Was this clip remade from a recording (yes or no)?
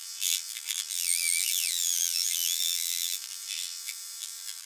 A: yes